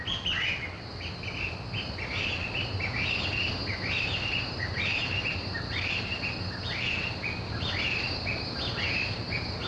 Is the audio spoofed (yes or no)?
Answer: no